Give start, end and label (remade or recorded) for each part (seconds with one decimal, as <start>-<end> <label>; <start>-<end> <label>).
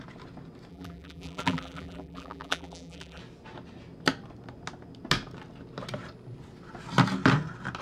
0.0-0.7 recorded; 0.7-3.2 remade; 3.2-7.8 recorded